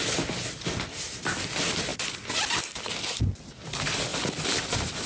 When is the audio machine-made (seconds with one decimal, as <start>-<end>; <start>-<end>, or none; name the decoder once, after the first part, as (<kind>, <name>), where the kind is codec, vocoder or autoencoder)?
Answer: 1.9-2.9 (vocoder, BigVGAN v2); 4.1-4.6